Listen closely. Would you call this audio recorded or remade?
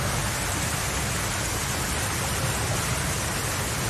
recorded